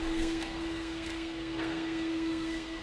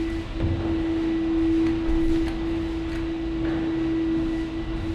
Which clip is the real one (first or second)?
second